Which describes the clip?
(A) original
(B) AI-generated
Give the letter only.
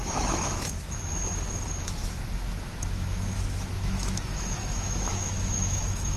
B